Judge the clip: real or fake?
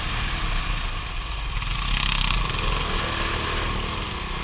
real